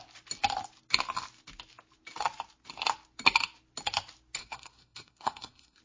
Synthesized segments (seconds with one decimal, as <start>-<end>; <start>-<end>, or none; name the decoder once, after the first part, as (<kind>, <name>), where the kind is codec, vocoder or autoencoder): 4.4-5.8 (codec, SNAC)